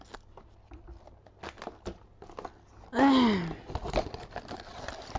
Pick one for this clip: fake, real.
real